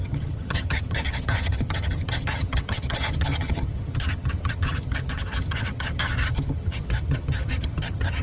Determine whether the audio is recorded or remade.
remade